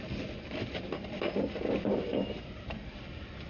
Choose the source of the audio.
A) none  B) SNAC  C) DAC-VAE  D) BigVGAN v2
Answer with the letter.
D